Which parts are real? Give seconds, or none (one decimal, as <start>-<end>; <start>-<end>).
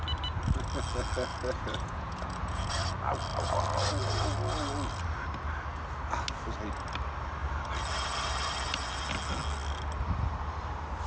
0.0-1.3; 2.7-11.1